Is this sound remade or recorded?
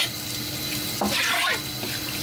recorded